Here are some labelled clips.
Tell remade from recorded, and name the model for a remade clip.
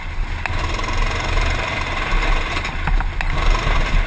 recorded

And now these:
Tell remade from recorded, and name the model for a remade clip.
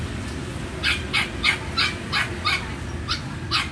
recorded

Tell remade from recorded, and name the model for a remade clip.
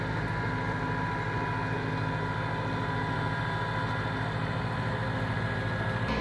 recorded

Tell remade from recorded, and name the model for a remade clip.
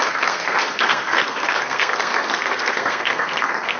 remade, codec, SNAC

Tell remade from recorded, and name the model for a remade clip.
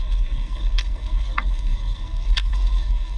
remade, codec, SNAC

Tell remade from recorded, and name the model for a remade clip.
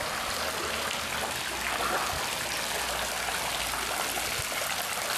recorded